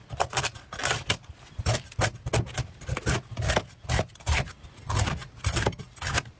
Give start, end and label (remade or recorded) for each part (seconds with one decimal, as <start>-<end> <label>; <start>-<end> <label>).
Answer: 0.0-6.4 recorded